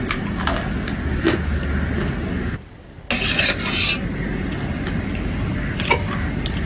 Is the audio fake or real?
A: real